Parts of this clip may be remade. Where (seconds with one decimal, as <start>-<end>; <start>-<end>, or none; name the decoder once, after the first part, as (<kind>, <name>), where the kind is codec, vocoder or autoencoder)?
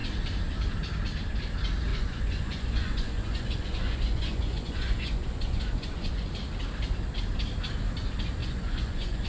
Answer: 1.9-6.3 (vocoder, Vocos); 8.4-9.3